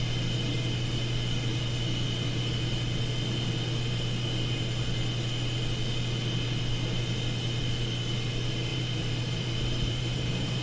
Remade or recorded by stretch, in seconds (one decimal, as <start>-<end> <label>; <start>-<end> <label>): 0.0-8.7 recorded; 8.7-10.6 remade